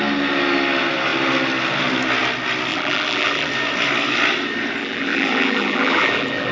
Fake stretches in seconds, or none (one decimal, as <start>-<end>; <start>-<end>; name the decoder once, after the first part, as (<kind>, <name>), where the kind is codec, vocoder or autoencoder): 2.7-3.5 (vocoder, BigVGAN v2); 4.8-6.5

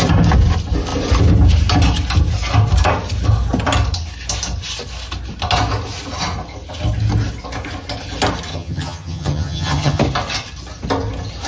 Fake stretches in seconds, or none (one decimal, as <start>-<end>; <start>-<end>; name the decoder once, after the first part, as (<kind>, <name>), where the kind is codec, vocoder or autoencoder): 8.5-10.0 (vocoder, HiFi-GAN)